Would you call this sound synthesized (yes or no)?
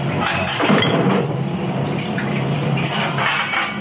yes